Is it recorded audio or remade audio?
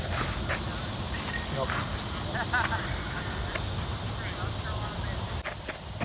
recorded